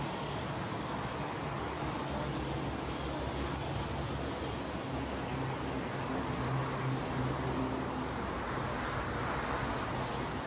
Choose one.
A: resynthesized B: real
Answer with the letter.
B